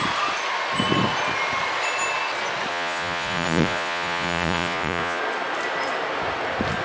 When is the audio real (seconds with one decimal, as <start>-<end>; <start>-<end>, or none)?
0.0-2.7; 5.2-6.8